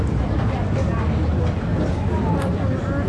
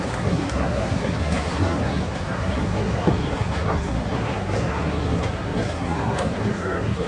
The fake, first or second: second